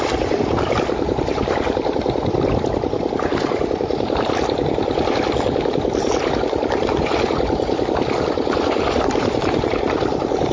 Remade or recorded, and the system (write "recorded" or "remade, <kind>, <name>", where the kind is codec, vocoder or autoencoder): recorded